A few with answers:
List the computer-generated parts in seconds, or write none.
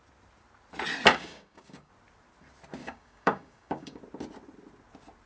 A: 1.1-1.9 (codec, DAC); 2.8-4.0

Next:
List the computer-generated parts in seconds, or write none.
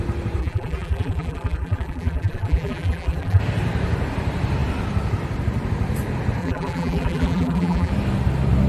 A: 0.4-3.4 (vocoder, BigVGAN v2); 6.4-7.9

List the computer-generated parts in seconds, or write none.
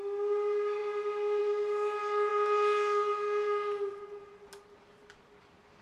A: none